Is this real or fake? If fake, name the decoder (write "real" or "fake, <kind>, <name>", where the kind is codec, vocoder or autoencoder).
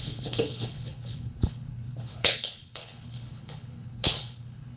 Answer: fake, codec, HILCodec